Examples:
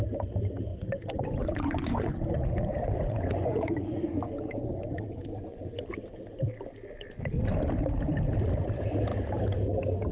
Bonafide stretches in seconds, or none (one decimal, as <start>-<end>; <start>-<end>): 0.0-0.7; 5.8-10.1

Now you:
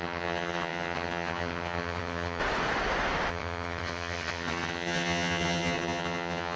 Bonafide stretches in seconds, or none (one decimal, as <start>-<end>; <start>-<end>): 2.4-3.3

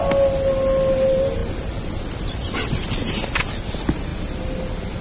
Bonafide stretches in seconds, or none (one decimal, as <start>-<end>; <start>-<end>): 0.0-5.0